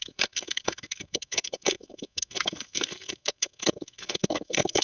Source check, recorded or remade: remade